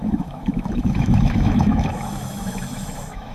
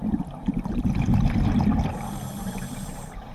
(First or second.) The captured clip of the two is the second